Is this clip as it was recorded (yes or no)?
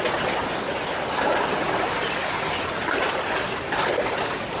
yes